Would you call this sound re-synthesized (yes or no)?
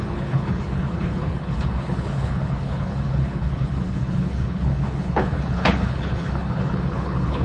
yes